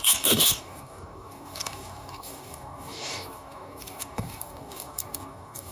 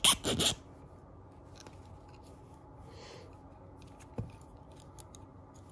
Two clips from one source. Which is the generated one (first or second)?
first